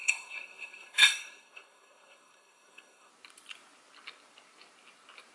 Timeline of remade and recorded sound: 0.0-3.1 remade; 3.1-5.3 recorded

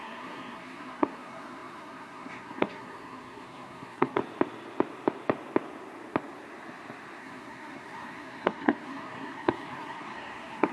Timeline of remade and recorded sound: 0.0-4.2 remade; 4.2-7.2 recorded; 7.2-10.7 remade